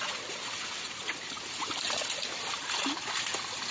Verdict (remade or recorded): recorded